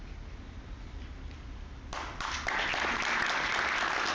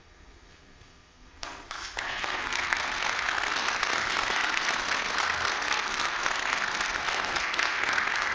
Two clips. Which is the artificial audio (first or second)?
second